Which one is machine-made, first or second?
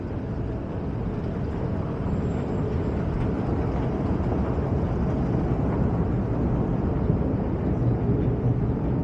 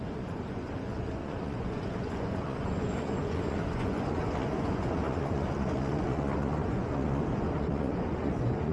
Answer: second